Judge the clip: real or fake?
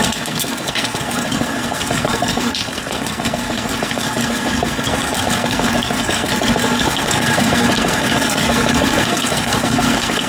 fake